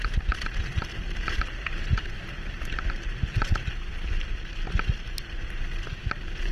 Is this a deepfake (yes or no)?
no